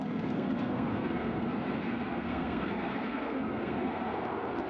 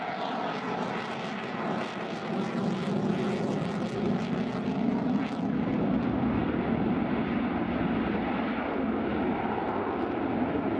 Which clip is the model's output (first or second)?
first